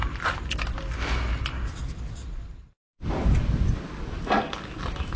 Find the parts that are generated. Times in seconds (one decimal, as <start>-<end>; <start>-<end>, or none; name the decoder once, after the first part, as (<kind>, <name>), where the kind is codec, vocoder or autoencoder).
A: none